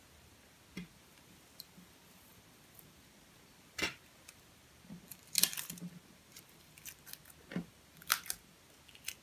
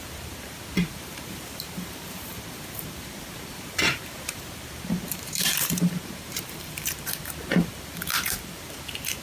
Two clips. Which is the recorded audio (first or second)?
first